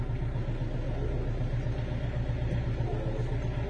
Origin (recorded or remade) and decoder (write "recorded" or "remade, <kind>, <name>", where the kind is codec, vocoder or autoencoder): recorded